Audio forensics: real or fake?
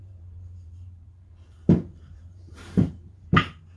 fake